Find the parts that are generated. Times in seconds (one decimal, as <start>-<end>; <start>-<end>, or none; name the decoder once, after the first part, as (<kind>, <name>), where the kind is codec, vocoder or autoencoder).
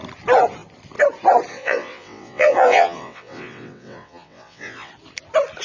1.5-4.9 (vocoder, WaveNeXt)